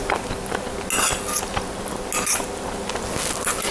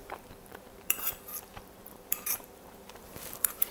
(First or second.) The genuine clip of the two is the first